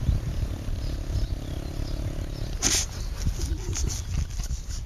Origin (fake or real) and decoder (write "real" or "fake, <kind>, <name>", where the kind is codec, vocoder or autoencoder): real